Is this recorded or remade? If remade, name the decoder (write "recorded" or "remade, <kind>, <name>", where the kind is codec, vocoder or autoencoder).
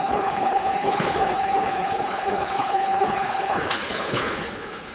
remade, codec, HILCodec